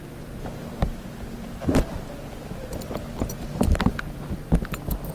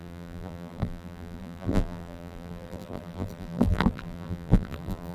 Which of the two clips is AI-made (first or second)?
second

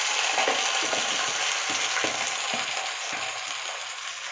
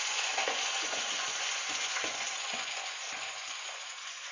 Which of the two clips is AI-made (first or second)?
second